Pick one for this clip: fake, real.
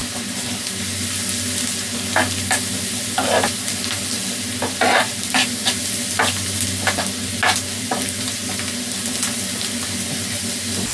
real